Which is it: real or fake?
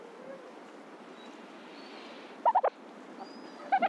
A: real